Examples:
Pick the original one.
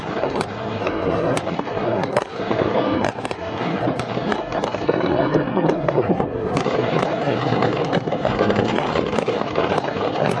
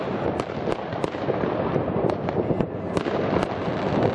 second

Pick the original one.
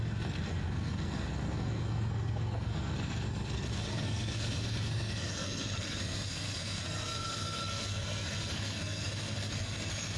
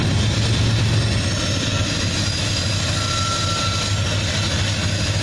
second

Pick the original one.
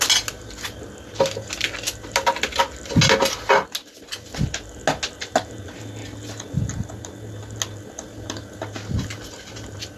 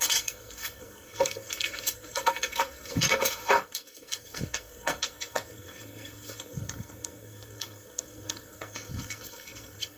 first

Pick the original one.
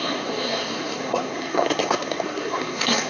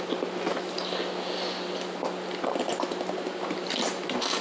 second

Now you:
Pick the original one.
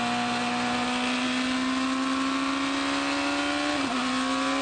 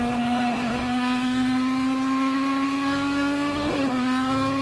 first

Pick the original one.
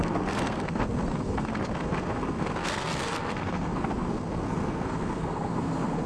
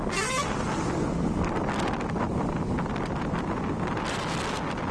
second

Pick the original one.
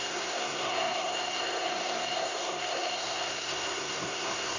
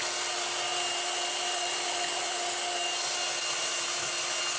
second